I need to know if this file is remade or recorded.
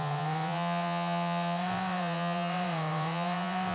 remade